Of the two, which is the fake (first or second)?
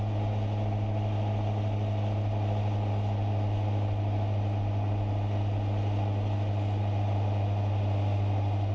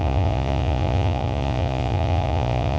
second